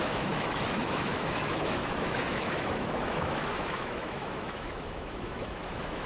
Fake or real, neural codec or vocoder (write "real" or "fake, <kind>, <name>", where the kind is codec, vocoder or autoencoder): fake, autoencoder, DAC-VAE